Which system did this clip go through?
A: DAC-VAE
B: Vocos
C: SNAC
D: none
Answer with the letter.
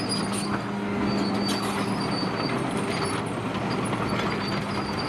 D